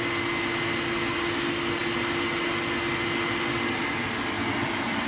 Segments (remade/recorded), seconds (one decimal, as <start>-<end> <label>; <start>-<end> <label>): 0.0-5.1 recorded